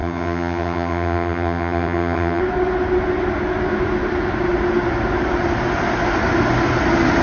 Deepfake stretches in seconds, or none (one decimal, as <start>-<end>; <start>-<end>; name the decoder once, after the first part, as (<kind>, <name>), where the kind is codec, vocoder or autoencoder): 0.0-2.4 (vocoder, HiFi-GAN)